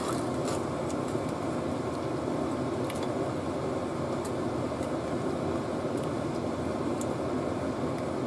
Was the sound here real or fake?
real